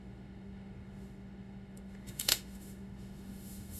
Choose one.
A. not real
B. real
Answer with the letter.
A